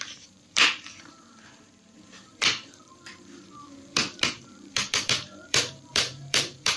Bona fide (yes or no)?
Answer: no